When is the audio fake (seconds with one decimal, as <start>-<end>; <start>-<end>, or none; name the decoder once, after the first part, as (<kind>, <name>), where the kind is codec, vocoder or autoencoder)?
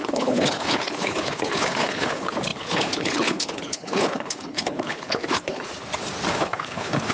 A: 0.0-5.7 (codec, HILCodec); 6.3-7.1